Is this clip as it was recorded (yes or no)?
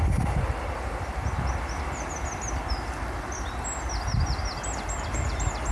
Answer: yes